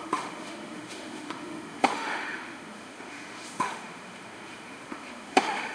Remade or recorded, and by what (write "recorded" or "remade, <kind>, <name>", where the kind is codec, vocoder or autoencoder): remade, autoencoder, DAC-VAE